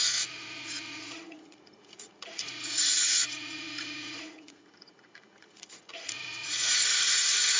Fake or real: fake